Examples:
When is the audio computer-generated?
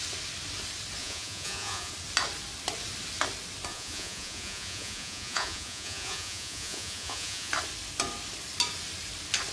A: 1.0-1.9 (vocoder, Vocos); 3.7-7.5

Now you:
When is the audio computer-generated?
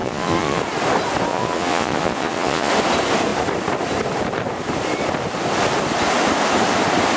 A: 0.0-0.6 (vocoder, Vocos); 1.3-2.7